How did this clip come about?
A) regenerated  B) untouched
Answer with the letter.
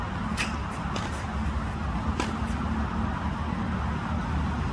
B